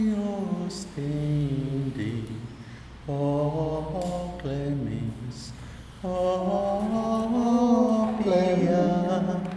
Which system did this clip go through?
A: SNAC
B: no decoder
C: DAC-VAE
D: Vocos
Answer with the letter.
B